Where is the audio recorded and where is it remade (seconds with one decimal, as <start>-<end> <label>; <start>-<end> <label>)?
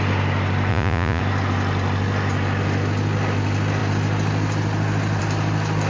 0.0-0.7 recorded; 0.7-1.2 remade; 1.2-5.9 recorded